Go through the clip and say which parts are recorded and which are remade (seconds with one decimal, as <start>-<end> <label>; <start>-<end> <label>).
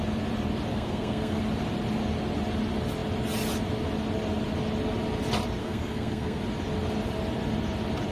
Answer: 0.0-0.7 recorded; 0.7-1.4 remade; 1.4-5.6 recorded; 5.6-6.4 remade; 6.4-8.1 recorded